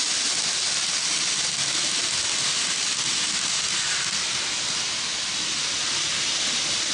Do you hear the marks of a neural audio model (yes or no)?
no